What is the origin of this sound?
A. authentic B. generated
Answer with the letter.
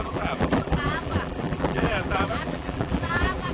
B